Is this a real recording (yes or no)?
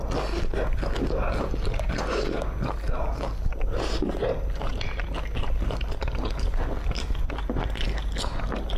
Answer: yes